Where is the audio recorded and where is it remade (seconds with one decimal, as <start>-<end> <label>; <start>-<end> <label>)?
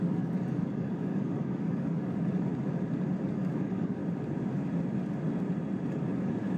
0.0-2.5 remade; 2.5-3.3 recorded; 3.3-4.0 remade; 4.0-5.9 recorded; 5.9-6.6 remade